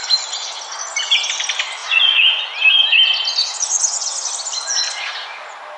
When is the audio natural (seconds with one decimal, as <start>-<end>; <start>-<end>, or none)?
0.0-1.8; 2.4-3.4; 4.3-5.8